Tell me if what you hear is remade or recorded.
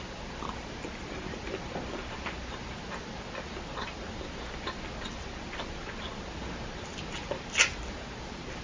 recorded